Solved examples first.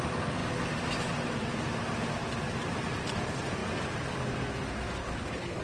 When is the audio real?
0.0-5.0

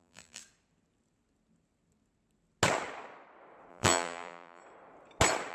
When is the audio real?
0.4-3.7; 4.6-5.5